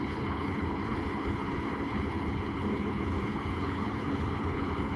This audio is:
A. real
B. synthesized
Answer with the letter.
B